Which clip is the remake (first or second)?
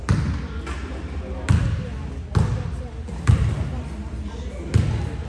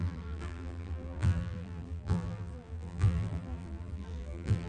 second